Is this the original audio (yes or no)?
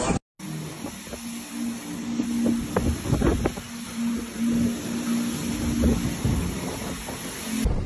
yes